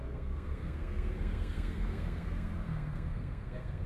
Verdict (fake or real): fake